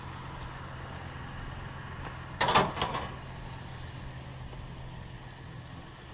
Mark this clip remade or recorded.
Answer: recorded